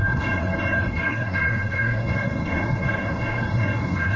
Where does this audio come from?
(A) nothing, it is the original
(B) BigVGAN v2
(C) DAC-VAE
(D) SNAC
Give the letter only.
D